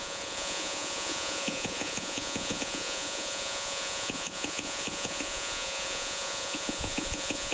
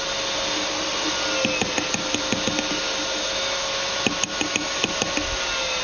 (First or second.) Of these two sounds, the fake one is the first